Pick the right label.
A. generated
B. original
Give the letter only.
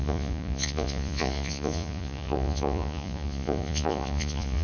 A